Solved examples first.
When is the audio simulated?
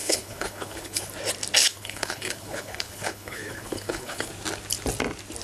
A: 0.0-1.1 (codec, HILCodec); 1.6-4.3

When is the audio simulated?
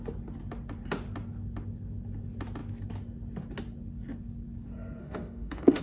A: 5.0-5.8 (autoencoder, DAC-VAE)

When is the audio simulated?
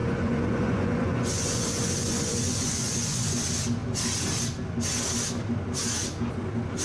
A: 0.0-3.4 (vocoder, Vocos)